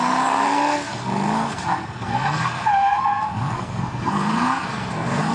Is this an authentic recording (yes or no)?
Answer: no